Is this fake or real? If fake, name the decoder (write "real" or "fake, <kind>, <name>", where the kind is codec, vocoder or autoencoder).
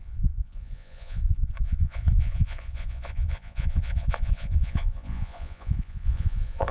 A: fake, vocoder, Vocos